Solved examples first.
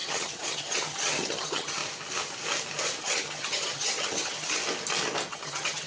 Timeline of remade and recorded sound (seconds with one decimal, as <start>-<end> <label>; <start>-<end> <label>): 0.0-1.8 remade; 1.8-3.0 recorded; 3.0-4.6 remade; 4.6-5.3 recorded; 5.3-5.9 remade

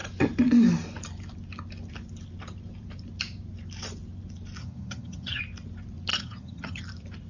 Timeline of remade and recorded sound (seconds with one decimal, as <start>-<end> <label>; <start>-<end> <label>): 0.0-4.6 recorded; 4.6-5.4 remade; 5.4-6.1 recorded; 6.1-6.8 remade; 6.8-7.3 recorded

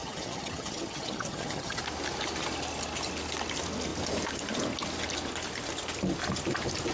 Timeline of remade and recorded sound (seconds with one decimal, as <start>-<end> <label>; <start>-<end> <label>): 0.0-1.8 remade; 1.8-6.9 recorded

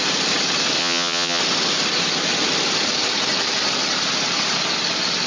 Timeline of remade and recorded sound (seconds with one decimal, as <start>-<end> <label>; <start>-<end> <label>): 0.0-0.8 recorded; 0.8-1.4 remade; 1.4-5.3 recorded